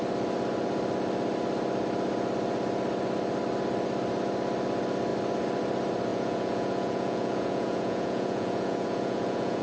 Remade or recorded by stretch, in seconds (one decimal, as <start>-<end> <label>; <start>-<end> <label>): 0.0-6.1 recorded; 6.1-9.6 remade